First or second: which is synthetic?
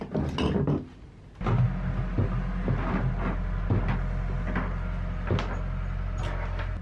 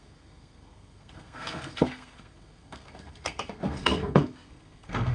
second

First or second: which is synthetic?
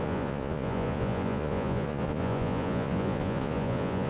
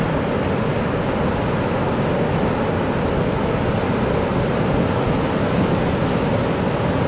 first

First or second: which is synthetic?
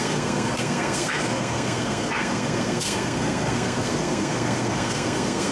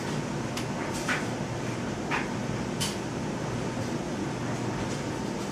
first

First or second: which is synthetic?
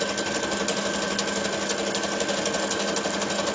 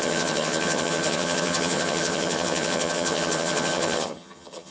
second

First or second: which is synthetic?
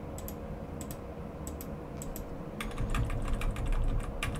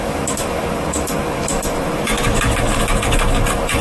second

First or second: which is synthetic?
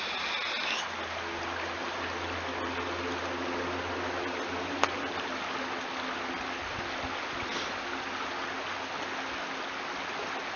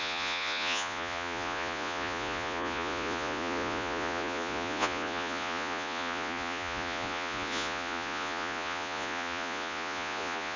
second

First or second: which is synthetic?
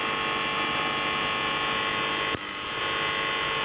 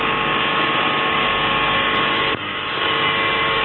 second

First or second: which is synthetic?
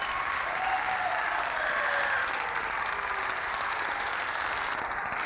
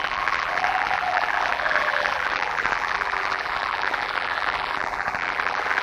second